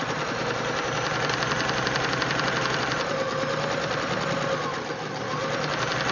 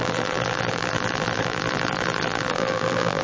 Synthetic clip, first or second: second